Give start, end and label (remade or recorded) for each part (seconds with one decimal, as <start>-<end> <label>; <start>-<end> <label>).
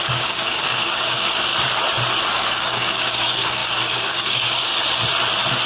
0.0-1.5 remade; 1.5-2.3 recorded; 2.3-4.7 remade; 4.7-5.7 recorded